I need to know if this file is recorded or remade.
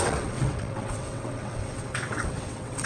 remade